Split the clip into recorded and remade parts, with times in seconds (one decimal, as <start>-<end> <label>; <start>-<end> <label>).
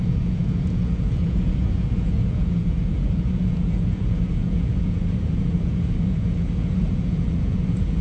0.0-8.0 remade